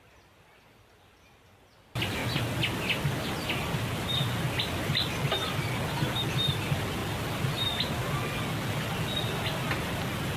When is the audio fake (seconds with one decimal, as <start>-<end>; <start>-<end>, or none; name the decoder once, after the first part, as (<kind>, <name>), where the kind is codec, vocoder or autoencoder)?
none